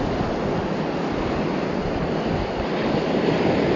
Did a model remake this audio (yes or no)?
no